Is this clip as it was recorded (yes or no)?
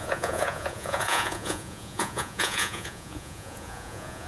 no